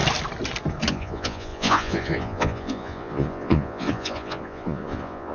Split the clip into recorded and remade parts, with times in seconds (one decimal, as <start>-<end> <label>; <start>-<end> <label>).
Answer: 0.0-0.9 recorded; 0.9-5.3 remade